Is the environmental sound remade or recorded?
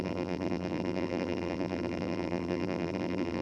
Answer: remade